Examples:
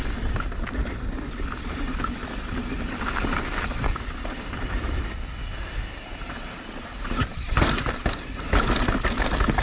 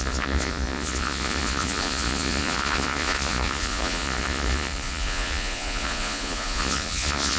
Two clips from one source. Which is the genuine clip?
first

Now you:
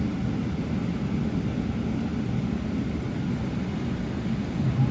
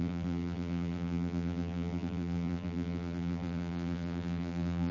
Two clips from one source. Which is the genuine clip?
first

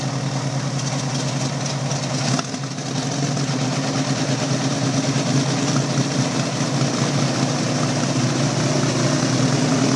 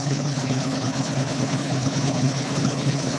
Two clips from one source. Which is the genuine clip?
first